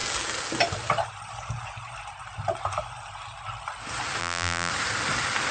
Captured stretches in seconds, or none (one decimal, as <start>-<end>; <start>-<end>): 0.0-4.2; 4.7-5.5